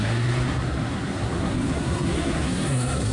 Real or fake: fake